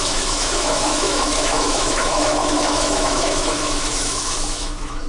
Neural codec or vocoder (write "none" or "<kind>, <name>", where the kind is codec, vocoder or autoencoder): autoencoder, DAC-VAE